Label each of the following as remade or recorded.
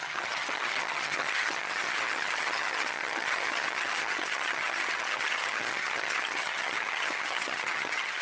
remade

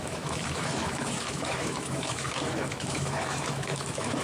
remade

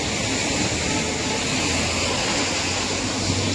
recorded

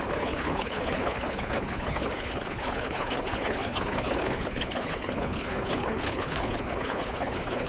remade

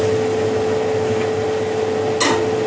recorded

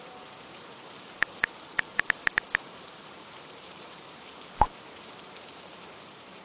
remade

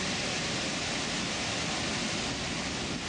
recorded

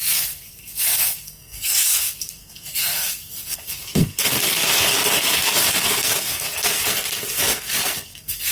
remade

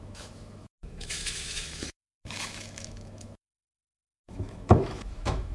remade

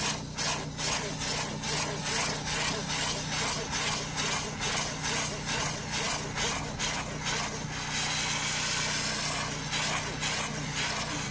recorded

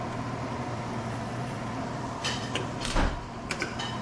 remade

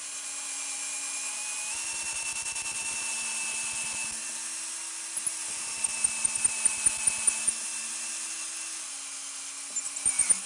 recorded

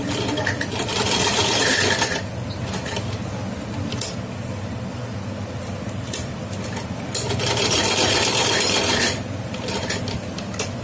recorded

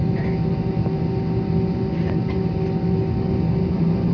recorded